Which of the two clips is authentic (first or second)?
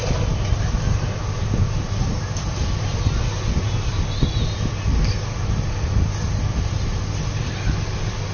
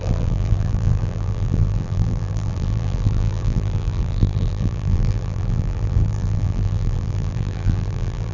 first